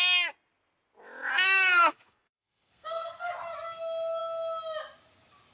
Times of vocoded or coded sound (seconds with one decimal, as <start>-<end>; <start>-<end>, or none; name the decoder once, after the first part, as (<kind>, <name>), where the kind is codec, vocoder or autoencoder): 1.3-3.3 (codec, SNAC)